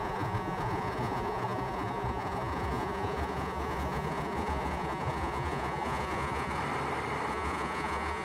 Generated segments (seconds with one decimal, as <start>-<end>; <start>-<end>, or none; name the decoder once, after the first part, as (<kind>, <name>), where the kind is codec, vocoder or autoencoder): 0.0-6.6 (vocoder, Vocos); 7.3-8.2